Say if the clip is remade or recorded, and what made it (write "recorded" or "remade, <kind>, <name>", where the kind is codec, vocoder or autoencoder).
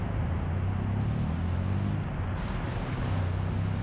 recorded